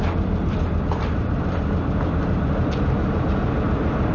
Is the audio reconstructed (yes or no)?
yes